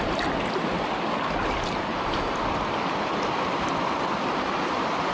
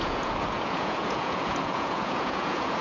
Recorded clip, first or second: first